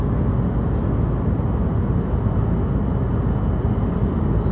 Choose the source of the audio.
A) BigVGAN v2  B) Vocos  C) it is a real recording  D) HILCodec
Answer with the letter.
C